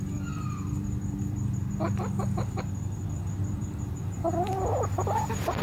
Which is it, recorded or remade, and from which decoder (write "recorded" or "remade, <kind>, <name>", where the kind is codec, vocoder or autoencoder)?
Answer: recorded